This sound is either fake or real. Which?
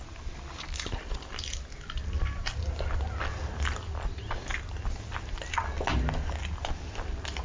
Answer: real